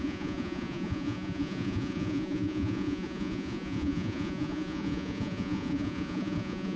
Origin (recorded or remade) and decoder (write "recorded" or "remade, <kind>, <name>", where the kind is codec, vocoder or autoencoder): remade, vocoder, Vocos